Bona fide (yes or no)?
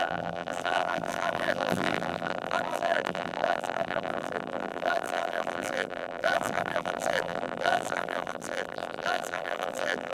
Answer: no